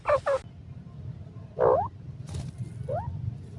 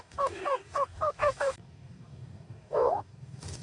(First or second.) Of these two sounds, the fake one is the second